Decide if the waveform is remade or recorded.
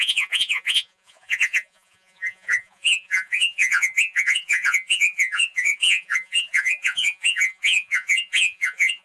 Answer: remade